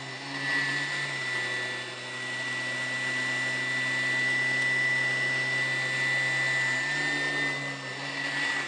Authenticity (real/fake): real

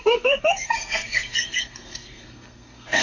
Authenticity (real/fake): fake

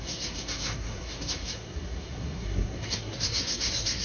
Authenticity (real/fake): fake